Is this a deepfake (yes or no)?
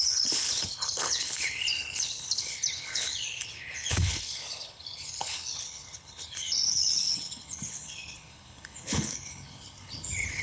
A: yes